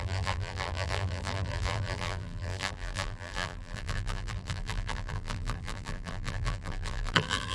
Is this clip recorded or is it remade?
remade